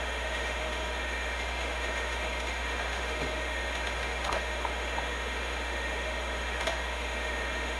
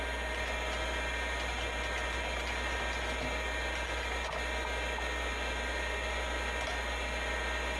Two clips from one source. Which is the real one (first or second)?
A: second